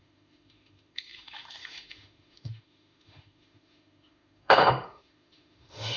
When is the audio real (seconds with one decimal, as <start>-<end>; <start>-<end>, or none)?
none

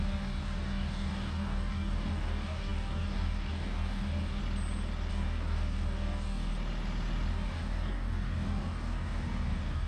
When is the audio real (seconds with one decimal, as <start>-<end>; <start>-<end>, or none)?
4.4-5.1; 6.5-7.3

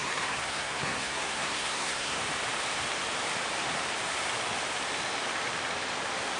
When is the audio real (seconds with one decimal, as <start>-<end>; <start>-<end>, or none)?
2.2-6.4

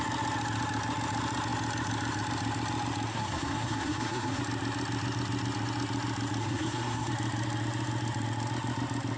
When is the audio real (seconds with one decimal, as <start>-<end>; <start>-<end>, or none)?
0.0-3.1; 4.4-6.4; 7.1-9.2

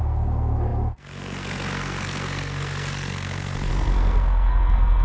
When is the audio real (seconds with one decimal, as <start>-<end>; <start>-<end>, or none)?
none

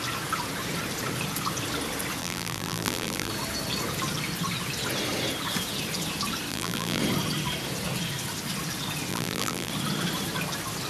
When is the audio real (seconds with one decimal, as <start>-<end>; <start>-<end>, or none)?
0.0-2.2; 3.3-6.5; 7.0-9.1; 9.7-10.9

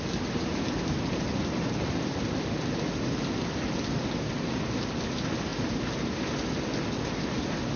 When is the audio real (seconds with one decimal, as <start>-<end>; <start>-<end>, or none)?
0.0-7.8

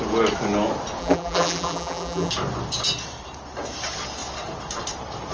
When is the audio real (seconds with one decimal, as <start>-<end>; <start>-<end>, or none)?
0.0-1.0; 2.3-5.3